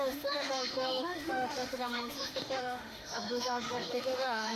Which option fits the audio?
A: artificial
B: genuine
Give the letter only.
A